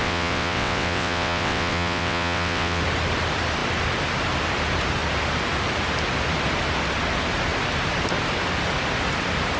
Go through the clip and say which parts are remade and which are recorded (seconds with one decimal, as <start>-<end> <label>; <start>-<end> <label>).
0.0-2.8 remade; 2.8-9.6 recorded